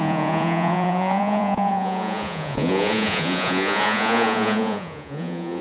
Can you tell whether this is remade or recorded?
remade